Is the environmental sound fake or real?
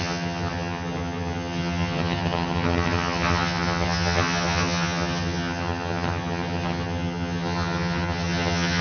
fake